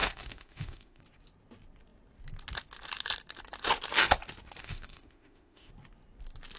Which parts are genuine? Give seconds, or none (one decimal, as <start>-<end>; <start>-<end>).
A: 1.0-4.6; 5.7-6.6